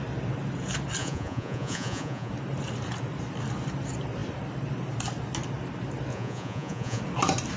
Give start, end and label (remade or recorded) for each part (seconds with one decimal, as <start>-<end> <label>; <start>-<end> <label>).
0.0-1.0 recorded; 1.0-2.3 remade; 2.3-6.1 recorded; 6.1-7.0 remade; 7.0-7.6 recorded

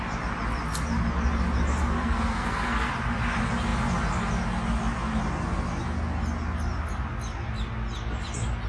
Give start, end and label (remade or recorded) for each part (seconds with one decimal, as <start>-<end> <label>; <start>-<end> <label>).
0.0-1.8 recorded; 1.8-2.9 remade; 2.9-8.7 recorded